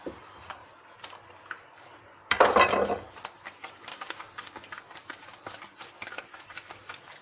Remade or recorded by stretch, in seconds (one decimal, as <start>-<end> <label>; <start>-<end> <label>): 0.0-7.2 recorded